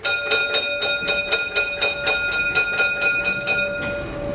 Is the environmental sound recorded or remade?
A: recorded